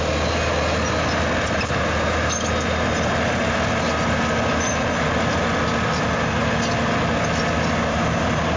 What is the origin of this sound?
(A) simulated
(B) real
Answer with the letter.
B